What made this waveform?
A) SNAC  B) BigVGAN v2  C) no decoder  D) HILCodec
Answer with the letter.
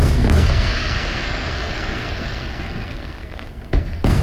A